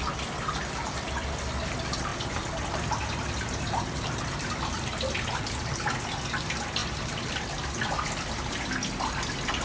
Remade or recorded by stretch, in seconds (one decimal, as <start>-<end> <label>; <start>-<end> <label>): 0.0-2.1 recorded; 2.1-6.0 remade; 6.0-6.8 recorded; 6.8-8.3 remade; 8.3-9.6 recorded

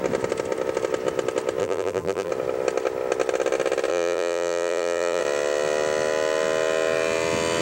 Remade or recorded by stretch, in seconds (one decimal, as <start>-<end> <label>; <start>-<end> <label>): 0.0-1.6 recorded; 1.6-2.3 remade; 2.3-3.9 recorded; 3.9-5.2 remade; 5.2-7.6 recorded

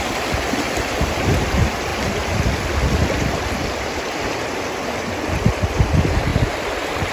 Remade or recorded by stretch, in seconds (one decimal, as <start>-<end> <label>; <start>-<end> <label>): 0.0-7.1 remade

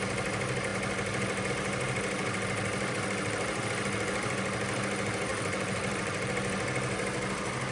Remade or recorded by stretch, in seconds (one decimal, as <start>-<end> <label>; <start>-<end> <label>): 0.0-5.3 recorded; 5.3-6.3 remade; 6.3-7.7 recorded

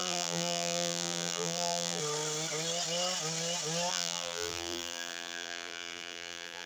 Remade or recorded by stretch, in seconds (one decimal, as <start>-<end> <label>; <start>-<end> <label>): 0.0-2.0 remade; 2.0-3.9 recorded; 3.9-6.7 remade

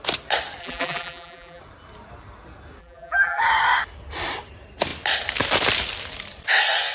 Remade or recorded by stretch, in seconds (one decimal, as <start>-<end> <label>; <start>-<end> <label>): 0.0-0.6 recorded; 0.6-1.6 remade; 1.6-2.8 recorded; 2.8-3.4 remade; 3.4-6.9 recorded

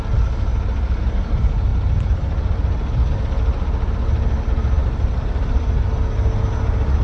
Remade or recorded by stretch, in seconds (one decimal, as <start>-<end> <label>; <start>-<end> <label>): 0.0-4.8 recorded; 4.8-5.8 remade; 5.8-7.0 recorded

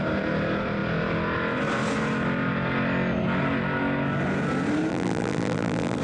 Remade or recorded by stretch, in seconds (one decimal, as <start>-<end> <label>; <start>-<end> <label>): 0.0-4.9 recorded; 4.9-6.0 remade